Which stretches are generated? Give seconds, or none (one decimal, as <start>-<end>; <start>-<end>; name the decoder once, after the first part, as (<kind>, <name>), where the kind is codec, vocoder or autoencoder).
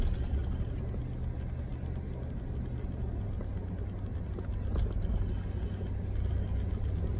0.4-1.0 (vocoder, BigVGAN v2)